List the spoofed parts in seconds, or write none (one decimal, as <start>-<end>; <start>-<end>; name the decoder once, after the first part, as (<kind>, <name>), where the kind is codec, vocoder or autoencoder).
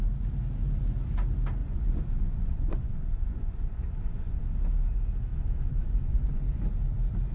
1.6-4.4 (vocoder, Vocos); 5.3-6.4